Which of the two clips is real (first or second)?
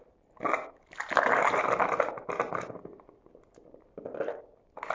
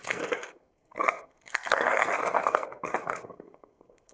first